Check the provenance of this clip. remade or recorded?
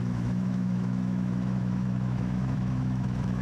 remade